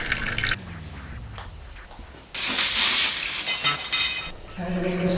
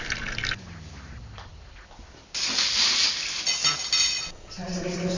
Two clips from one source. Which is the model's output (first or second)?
second